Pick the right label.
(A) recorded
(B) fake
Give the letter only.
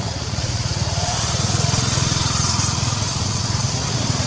B